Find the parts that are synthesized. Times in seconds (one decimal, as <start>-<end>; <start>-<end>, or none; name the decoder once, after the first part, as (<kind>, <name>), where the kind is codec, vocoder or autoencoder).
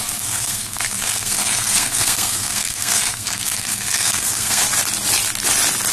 0.0-4.6 (codec, SNAC)